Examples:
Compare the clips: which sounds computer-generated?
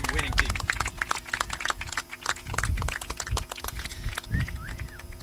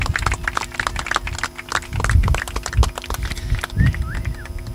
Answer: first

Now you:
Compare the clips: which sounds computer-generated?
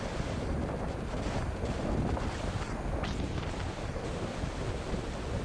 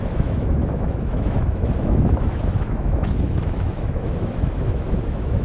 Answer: second